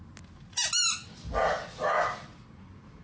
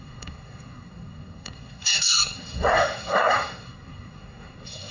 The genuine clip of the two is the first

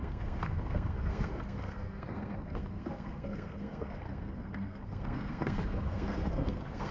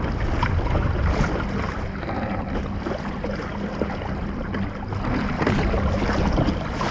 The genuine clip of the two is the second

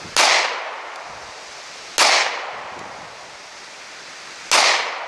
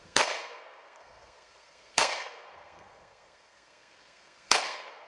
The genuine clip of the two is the first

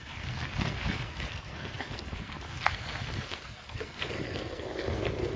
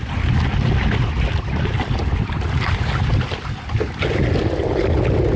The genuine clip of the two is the second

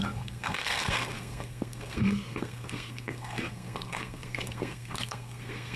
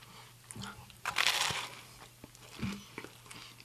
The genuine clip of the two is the second